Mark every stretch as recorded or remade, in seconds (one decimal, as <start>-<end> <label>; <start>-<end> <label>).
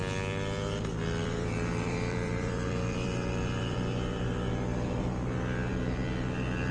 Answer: 0.0-1.2 recorded; 1.2-4.5 remade; 4.5-6.7 recorded